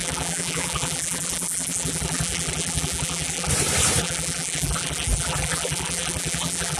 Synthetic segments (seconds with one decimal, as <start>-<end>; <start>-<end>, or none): 0.0-3.5; 4.0-6.8